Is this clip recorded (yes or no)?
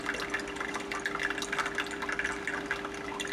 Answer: yes